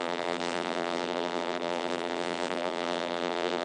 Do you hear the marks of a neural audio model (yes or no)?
yes